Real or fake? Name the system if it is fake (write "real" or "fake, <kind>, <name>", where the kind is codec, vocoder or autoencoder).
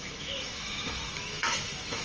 fake, autoencoder, DAC-VAE